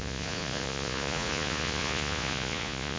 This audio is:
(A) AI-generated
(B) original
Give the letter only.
A